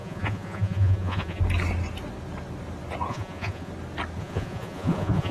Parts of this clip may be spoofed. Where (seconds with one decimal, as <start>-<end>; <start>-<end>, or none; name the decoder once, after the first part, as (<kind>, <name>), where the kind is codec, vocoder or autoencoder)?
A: 0.0-1.4 (vocoder, Vocos); 3.1-3.7; 4.2-5.3